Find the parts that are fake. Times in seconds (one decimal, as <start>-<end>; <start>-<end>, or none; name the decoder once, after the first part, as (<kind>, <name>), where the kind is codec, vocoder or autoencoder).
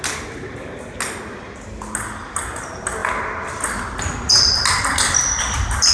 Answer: none